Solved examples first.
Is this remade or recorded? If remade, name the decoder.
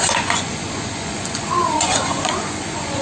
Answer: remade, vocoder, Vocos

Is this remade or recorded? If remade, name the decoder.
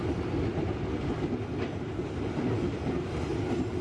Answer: recorded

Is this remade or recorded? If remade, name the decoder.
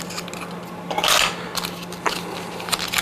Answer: recorded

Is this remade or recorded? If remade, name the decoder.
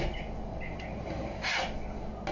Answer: recorded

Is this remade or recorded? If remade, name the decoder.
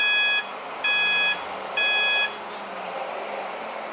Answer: recorded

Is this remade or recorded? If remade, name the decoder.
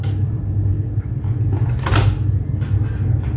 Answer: recorded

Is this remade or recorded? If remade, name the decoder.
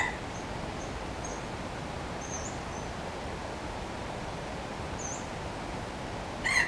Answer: recorded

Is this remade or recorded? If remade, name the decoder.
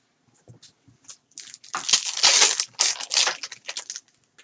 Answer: recorded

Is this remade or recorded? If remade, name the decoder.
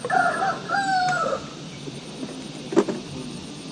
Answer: recorded